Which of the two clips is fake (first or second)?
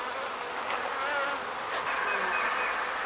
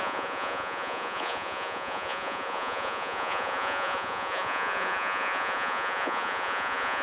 second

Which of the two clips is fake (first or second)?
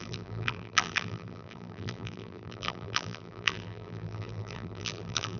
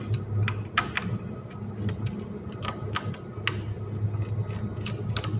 first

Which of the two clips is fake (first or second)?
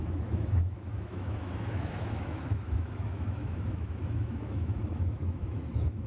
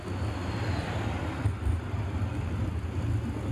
first